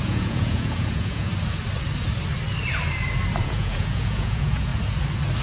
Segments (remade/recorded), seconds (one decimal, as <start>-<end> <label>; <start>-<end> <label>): 0.0-1.3 remade; 1.3-3.4 recorded; 3.4-4.7 remade; 4.7-5.4 recorded

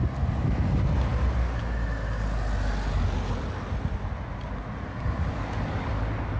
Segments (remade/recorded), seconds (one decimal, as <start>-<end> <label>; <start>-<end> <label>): 0.0-6.4 recorded

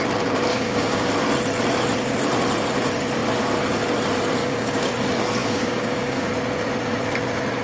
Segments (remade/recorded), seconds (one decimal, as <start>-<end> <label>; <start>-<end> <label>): 0.0-0.5 recorded; 0.5-1.1 remade; 1.1-4.4 recorded; 4.4-4.9 remade; 4.9-5.4 recorded; 5.4-6.3 remade; 6.3-7.6 recorded

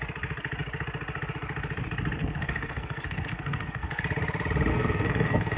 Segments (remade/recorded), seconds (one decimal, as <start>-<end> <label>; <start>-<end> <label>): 0.0-2.2 recorded; 2.2-4.0 remade; 4.0-4.7 recorded; 4.7-5.6 remade